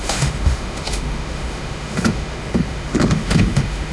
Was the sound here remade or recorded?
remade